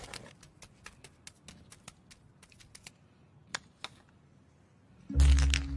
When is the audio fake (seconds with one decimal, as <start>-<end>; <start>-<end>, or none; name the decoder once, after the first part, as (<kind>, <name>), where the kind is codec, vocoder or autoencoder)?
none